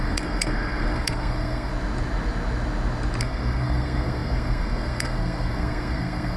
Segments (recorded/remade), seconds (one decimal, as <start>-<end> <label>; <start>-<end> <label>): 0.0-1.7 remade; 1.7-3.2 recorded; 3.2-6.4 remade